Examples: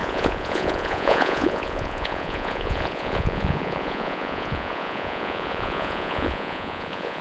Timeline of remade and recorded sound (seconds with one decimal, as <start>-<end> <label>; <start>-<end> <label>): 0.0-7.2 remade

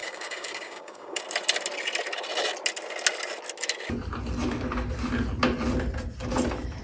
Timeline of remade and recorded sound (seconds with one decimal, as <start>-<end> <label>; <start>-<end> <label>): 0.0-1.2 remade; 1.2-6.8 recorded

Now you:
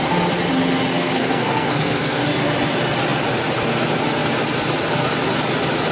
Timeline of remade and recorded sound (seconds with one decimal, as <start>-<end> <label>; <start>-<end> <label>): 0.0-0.9 recorded; 0.9-2.2 remade; 2.2-5.9 recorded